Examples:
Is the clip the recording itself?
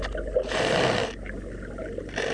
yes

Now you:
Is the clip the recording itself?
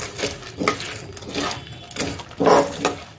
yes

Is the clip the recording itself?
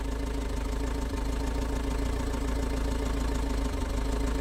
yes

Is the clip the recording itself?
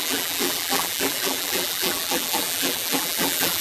no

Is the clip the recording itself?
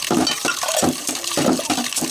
no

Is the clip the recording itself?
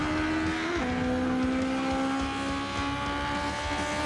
yes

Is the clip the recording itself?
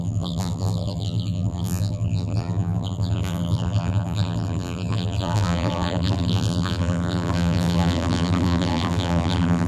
no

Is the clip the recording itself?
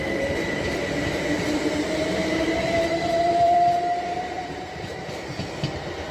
no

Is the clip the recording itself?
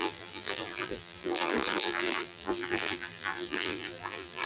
no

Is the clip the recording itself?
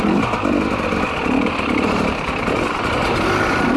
no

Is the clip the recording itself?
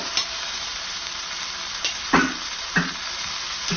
no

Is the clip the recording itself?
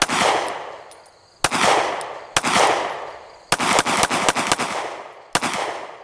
yes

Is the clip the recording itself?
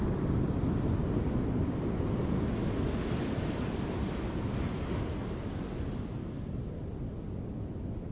yes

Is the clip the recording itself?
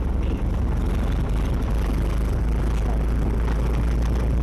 yes